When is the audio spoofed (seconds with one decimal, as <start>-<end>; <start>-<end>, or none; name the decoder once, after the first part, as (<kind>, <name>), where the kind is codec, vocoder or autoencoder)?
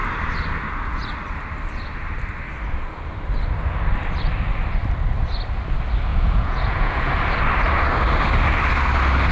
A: 6.1-7.1 (vocoder, Vocos)